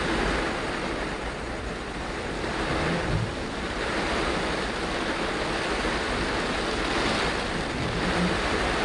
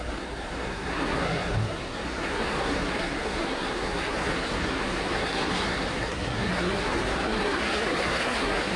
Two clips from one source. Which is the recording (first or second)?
first